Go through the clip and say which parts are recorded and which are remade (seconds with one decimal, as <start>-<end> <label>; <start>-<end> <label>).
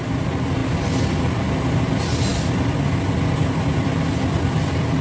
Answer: 0.0-5.0 recorded